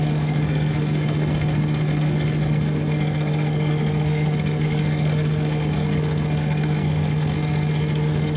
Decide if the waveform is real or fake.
fake